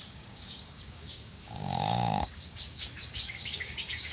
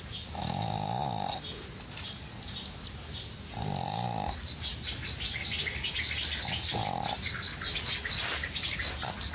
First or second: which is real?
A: second